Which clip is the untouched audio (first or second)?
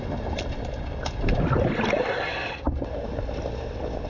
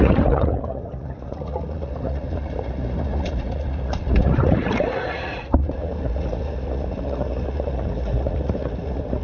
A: first